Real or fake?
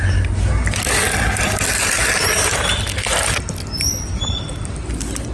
real